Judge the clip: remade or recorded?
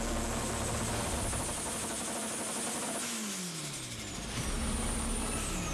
recorded